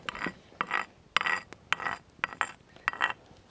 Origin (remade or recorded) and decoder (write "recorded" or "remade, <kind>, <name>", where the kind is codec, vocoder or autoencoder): recorded